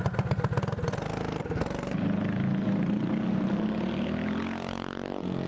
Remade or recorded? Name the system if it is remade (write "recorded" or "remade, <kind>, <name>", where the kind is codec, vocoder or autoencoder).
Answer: recorded